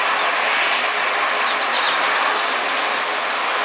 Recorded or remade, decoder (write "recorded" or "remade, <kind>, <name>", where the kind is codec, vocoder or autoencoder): recorded